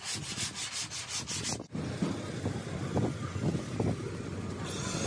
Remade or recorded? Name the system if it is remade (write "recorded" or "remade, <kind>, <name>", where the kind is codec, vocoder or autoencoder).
recorded